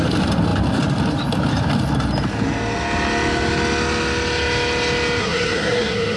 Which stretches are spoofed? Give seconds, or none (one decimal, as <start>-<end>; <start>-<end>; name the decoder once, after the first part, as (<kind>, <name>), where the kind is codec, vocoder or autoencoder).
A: 5.2-6.2 (codec, SNAC)